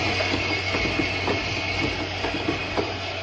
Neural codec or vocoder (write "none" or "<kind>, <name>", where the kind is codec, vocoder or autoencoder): none